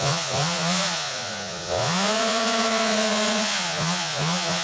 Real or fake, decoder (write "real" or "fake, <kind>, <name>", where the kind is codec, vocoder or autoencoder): fake, vocoder, Vocos